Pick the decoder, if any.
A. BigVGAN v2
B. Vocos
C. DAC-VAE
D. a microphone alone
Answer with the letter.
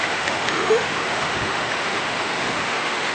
C